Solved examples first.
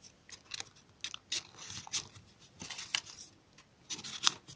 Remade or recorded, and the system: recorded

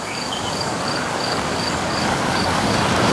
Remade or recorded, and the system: remade, codec, DAC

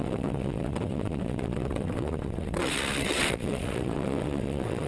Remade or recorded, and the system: remade, vocoder, WaveNeXt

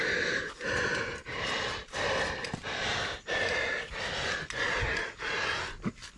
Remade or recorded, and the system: recorded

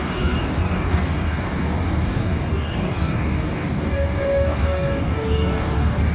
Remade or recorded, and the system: remade, codec, DAC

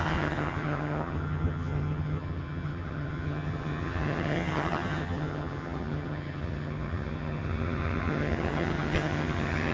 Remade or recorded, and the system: remade, vocoder, HiFi-GAN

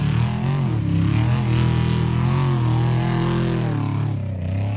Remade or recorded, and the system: recorded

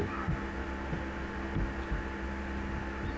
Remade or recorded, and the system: recorded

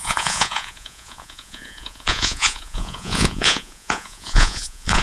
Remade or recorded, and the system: remade, vocoder, Vocos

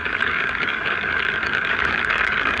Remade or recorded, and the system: remade, codec, DAC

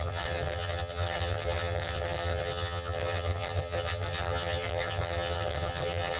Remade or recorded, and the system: remade, vocoder, HiFi-GAN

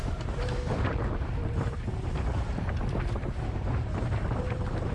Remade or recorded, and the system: remade, vocoder, BigVGAN v2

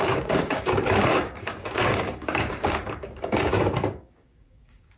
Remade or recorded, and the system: remade, codec, DAC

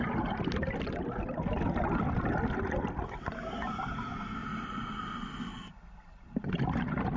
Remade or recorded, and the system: recorded